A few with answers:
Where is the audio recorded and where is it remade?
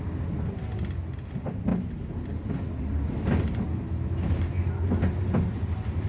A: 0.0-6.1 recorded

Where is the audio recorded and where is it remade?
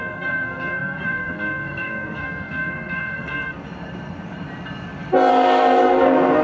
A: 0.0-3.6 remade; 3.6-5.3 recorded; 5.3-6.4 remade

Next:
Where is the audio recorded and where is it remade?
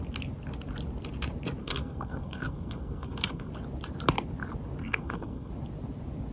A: 0.0-1.6 recorded; 1.6-3.5 remade; 3.5-4.8 recorded; 4.8-5.5 remade; 5.5-6.3 recorded